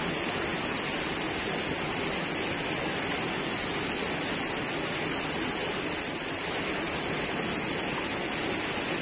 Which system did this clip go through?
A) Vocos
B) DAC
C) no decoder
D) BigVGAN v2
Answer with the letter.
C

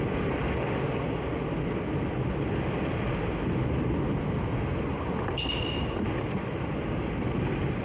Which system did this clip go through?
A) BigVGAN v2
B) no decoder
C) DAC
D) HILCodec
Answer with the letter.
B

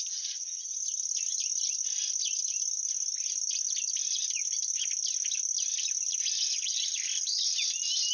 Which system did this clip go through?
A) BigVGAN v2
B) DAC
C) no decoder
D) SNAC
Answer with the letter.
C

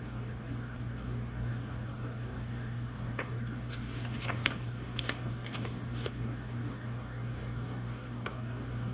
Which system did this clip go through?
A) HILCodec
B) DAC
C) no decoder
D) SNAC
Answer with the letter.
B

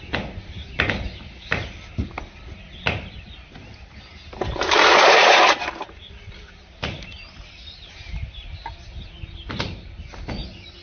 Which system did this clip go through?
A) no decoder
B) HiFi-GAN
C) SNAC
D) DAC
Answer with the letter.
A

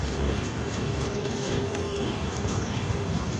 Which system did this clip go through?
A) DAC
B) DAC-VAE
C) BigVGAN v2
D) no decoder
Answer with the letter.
A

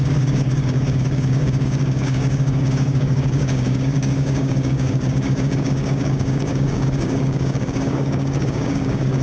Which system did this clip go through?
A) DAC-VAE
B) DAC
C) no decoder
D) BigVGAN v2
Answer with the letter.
B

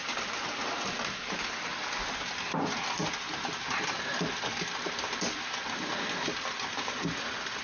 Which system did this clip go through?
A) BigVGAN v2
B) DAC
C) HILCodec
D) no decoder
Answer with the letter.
D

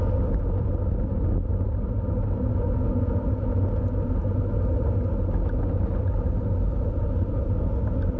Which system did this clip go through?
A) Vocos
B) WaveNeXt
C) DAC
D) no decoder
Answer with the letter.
D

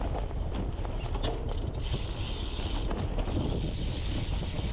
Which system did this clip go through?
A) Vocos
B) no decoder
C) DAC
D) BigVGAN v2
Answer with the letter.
B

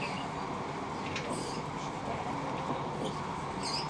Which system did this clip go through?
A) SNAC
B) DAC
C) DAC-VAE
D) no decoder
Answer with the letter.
D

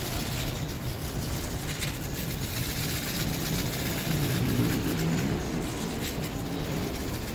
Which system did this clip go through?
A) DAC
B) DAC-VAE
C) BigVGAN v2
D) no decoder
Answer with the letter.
D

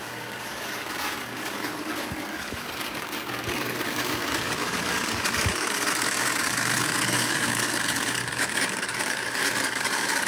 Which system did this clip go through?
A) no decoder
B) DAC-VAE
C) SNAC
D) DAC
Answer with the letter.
D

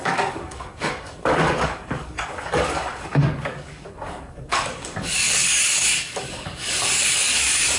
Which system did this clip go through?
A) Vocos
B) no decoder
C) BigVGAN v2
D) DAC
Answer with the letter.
D